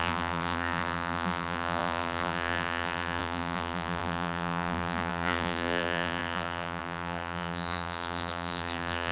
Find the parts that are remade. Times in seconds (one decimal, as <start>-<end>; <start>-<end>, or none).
0.0-9.1